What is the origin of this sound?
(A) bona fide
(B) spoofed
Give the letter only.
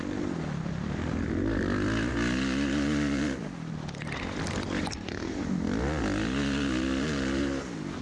A